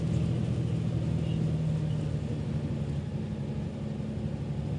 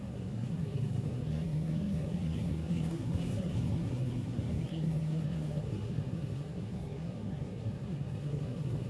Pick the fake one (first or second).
second